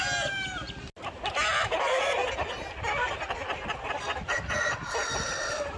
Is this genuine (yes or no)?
yes